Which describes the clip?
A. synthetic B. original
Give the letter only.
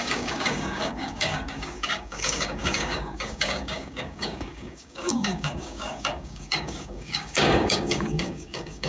A